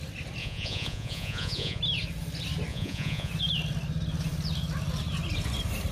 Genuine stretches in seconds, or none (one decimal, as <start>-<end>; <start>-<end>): 0.0-0.4; 1.8-2.7; 3.3-5.9